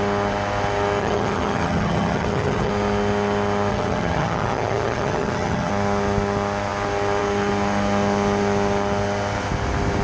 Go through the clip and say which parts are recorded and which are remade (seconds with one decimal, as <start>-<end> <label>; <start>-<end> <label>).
0.0-1.0 recorded; 1.0-2.7 remade; 2.7-3.7 recorded; 3.7-5.7 remade; 5.7-10.0 recorded